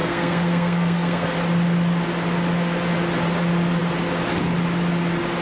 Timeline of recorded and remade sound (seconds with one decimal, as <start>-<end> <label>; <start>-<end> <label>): 0.0-1.3 remade; 1.3-5.4 recorded